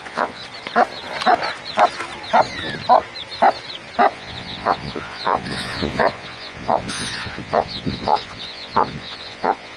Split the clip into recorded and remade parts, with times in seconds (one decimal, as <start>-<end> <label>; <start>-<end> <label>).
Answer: 0.0-0.4 remade; 0.4-4.1 recorded; 4.1-9.8 remade